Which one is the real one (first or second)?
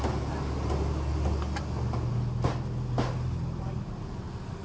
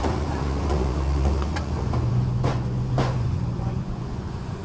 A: first